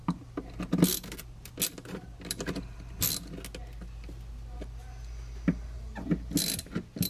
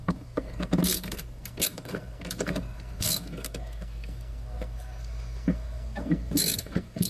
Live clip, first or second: first